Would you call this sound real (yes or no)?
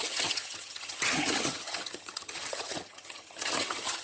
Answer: no